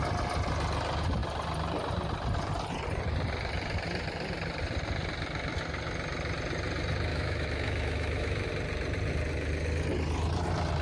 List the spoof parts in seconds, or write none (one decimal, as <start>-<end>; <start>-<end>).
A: 7.1-8.5